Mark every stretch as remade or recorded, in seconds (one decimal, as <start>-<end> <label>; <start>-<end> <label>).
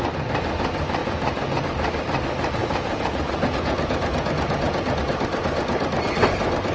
0.0-1.0 recorded; 1.0-1.6 remade; 1.6-2.6 recorded; 2.6-5.0 remade; 5.0-6.7 recorded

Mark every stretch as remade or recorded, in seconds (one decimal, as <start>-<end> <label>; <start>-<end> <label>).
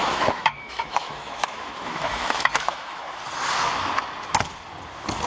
0.0-3.2 remade; 3.2-5.3 recorded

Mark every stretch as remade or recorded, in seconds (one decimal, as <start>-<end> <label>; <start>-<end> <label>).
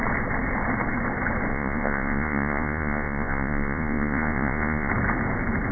0.0-1.5 recorded; 1.5-4.9 remade; 4.9-5.7 recorded